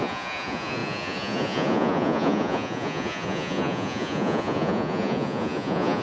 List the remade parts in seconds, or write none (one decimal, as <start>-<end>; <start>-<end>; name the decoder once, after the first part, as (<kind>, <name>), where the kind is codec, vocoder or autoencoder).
0.0-6.0 (vocoder, Vocos)